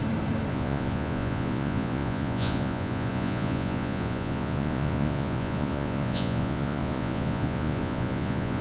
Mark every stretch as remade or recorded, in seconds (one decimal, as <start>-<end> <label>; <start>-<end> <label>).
0.0-0.5 recorded; 0.5-8.6 remade

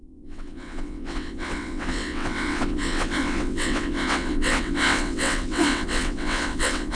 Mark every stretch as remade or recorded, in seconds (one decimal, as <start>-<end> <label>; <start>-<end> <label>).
0.0-6.9 remade

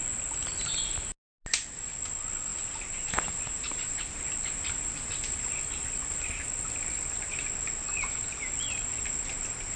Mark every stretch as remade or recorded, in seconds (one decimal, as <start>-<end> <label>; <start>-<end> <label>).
0.0-2.5 recorded; 2.5-4.2 remade; 4.2-9.8 recorded